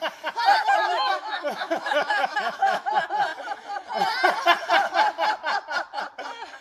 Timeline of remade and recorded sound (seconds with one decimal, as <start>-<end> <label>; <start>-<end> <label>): 0.0-0.5 recorded; 0.5-2.9 remade; 2.9-6.6 recorded